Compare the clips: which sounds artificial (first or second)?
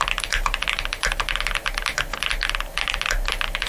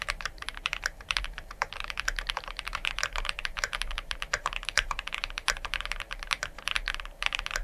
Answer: second